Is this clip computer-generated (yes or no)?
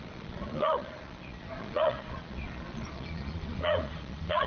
yes